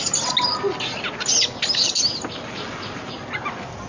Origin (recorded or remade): recorded